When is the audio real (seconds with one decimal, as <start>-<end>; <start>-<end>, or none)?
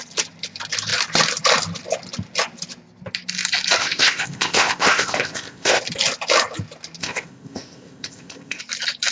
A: 0.0-3.8; 5.8-7.0; 8.6-9.1